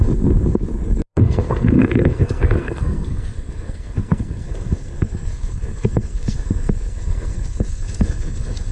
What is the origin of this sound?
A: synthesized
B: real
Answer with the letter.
A